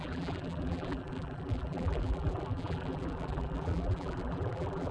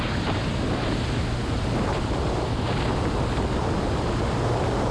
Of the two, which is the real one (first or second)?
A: second